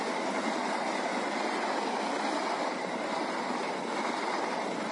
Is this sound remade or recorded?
recorded